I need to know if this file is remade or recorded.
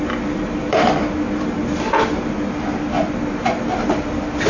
recorded